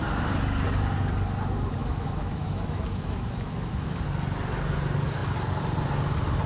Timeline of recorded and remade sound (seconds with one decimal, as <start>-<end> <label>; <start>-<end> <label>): 0.0-1.8 recorded; 1.8-4.0 remade; 4.0-6.5 recorded